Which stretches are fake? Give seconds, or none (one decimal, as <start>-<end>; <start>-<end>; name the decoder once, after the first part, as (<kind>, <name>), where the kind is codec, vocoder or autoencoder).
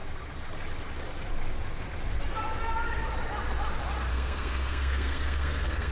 4.1-5.9 (codec, SNAC)